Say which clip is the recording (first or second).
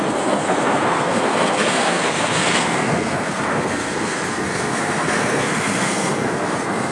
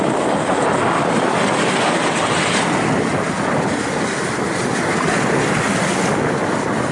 second